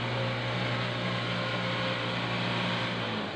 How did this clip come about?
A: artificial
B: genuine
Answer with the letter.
B